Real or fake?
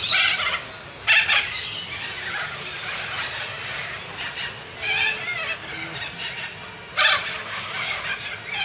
real